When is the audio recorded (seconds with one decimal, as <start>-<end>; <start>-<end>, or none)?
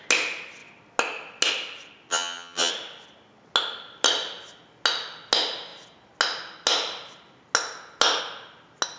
0.0-2.1; 2.7-9.0